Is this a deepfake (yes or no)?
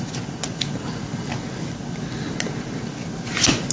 no